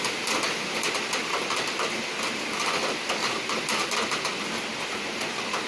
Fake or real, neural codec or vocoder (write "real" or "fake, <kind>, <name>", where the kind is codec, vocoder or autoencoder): real